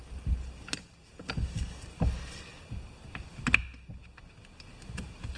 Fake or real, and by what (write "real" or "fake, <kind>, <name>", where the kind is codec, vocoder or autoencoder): real